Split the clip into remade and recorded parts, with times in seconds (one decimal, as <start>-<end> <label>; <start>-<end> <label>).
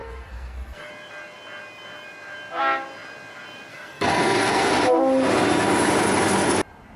0.0-0.9 remade; 0.9-3.7 recorded; 3.7-4.7 remade; 4.7-7.0 recorded